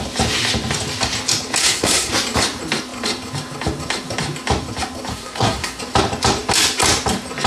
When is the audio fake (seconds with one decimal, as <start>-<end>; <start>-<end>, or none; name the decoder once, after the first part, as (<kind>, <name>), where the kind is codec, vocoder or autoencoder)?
1.6-2.1 (codec, SNAC); 5.1-5.8